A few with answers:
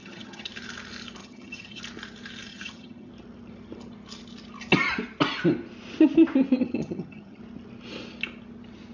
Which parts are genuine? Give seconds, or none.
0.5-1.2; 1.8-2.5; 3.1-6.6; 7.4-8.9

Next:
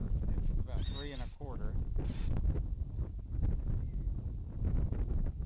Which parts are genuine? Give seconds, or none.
2.2-5.5

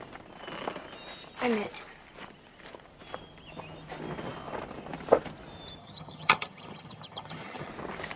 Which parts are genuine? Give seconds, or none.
0.0-5.8; 7.7-8.2